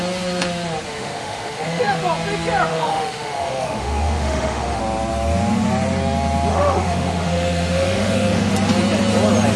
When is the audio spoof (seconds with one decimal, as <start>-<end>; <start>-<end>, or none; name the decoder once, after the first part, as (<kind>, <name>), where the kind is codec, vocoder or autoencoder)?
0.9-2.0 (autoencoder, DAC-VAE); 2.7-4.8; 6.5-8.5

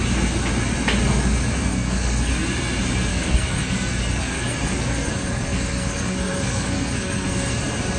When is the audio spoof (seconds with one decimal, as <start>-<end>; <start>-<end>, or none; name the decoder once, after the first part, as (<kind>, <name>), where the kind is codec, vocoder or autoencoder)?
1.7-2.3 (codec, SNAC); 3.1-7.6

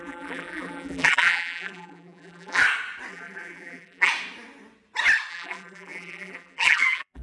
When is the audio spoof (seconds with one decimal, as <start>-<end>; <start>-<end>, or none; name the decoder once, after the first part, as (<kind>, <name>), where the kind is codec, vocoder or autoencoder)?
0.0-2.6 (vocoder, BigVGAN v2); 3.1-4.1; 5.3-7.2

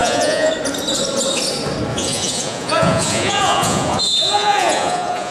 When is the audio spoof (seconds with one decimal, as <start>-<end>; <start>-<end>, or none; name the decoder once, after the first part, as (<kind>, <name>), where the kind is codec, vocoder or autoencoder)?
0.0-0.5 (vocoder, Vocos); 1.9-5.3

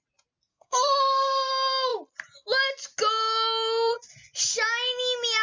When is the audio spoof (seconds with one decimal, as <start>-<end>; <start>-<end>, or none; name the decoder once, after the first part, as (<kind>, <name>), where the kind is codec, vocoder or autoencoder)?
0.5-1.5 (codec, SNAC)

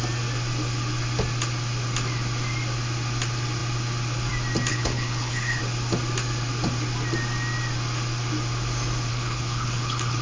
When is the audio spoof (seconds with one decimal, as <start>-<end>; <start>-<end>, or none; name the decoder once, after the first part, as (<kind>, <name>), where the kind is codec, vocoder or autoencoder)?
4.7-5.6 (codec, HILCodec); 9.1-10.2

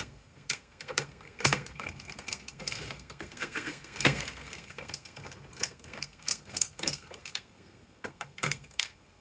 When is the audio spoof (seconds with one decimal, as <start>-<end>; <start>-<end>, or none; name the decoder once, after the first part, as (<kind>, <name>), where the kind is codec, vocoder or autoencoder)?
0.0-9.2 (codec, SNAC)

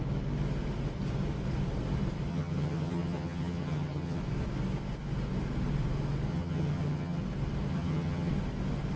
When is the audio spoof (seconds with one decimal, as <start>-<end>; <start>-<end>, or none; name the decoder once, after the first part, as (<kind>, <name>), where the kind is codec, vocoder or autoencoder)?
2.3-4.2 (vocoder, HiFi-GAN); 6.3-7.2; 7.7-8.3